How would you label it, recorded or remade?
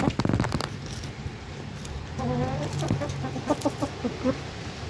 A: recorded